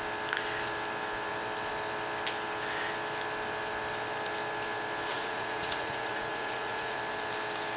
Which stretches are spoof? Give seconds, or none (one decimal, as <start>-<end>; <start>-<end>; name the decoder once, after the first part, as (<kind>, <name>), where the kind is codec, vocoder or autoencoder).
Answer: 5.1-7.0 (vocoder, Vocos)